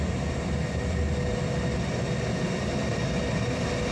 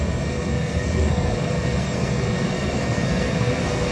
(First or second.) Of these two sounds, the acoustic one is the first